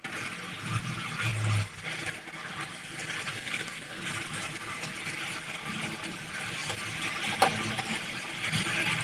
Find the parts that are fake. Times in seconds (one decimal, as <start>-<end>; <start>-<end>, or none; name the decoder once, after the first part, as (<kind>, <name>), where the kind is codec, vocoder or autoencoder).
3.3-4.0 (codec, SNAC)